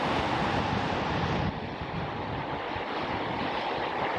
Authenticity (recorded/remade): recorded